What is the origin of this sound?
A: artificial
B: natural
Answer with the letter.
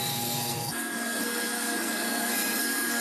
A